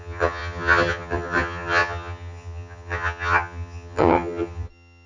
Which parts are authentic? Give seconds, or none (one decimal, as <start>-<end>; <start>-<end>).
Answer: none